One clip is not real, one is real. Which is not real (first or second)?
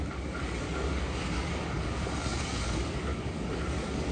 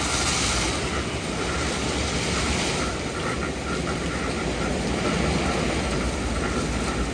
first